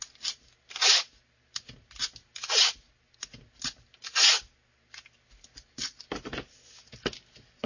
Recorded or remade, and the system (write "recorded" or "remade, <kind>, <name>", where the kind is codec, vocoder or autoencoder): recorded